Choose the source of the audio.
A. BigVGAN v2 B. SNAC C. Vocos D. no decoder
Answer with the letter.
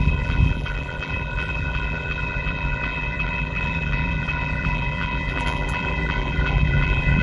A